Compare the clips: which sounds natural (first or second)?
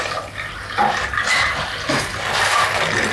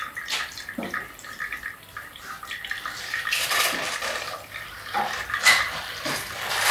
first